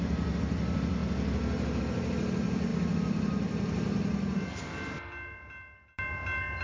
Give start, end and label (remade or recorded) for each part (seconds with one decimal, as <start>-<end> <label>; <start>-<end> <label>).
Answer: 0.0-6.6 recorded